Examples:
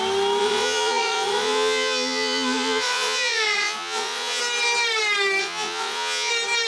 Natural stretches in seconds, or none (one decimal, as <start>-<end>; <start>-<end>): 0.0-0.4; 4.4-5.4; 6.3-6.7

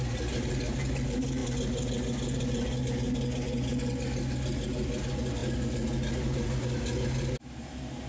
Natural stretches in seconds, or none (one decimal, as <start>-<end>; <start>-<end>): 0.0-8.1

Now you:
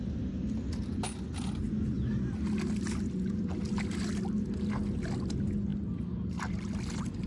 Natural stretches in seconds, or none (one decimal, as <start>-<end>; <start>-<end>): 0.0-7.3

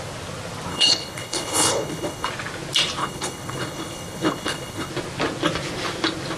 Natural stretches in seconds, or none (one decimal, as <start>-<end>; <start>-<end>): 0.0-0.7; 2.3-3.0; 4.9-6.4

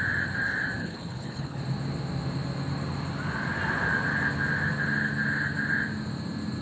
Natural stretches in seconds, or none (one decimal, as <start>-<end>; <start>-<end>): 0.0-0.8; 1.6-6.6

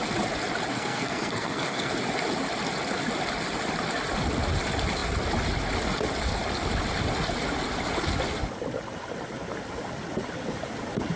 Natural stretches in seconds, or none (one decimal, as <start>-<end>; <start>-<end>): 0.0-0.7; 1.9-11.2